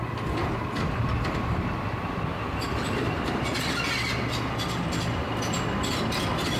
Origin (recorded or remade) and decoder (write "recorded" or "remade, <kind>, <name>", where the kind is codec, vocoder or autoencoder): recorded